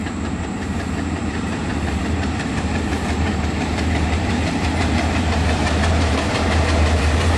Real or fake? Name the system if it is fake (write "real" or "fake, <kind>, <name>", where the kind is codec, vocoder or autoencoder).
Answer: fake, vocoder, BigVGAN v2